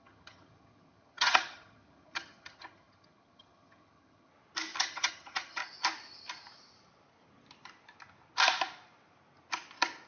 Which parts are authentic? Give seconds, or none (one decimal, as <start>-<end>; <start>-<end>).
4.3-4.8; 5.6-10.1